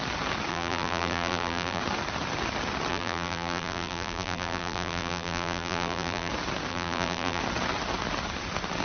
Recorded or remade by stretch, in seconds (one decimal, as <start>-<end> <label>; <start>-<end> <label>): 0.0-0.5 recorded; 0.5-1.8 remade; 1.8-2.9 recorded; 2.9-6.3 remade; 6.3-6.7 recorded; 6.7-7.4 remade; 7.4-8.8 recorded